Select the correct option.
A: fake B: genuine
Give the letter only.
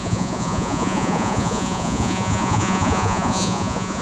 A